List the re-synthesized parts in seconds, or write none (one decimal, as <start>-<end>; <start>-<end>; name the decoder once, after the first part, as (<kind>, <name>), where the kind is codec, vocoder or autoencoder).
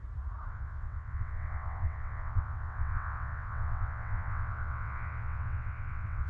0.5-6.3 (vocoder, WaveNeXt)